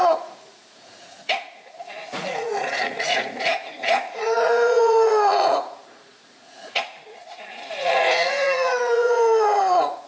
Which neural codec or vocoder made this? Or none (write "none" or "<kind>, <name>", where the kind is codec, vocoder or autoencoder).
vocoder, Vocos